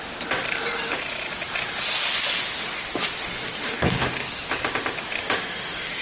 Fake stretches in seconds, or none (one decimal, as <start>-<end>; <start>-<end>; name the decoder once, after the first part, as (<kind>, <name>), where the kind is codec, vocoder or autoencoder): 3.6-4.3 (codec, HILCodec)

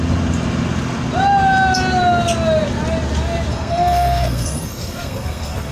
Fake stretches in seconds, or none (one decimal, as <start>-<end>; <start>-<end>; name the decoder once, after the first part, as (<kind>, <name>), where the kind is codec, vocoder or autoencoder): 3.5-5.7 (codec, SNAC)

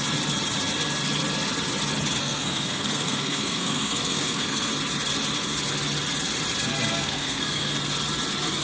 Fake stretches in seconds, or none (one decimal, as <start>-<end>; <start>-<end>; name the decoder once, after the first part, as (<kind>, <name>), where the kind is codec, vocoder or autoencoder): 2.2-4.7 (codec, SNAC); 6.9-7.7

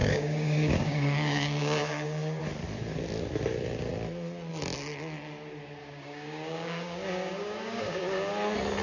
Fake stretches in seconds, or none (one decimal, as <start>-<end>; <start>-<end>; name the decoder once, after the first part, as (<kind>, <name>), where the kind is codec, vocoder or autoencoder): 0.0-2.4 (codec, DAC); 5.8-8.3

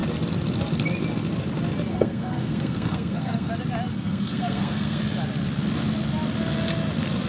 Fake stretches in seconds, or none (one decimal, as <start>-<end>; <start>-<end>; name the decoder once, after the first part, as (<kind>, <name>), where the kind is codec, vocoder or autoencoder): 1.9-3.5 (codec, SNAC); 3.9-5.0

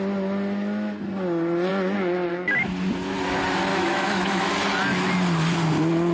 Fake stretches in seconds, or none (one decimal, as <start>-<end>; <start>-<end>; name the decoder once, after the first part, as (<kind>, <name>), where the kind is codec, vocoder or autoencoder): 3.7-4.5 (autoencoder, DAC-VAE)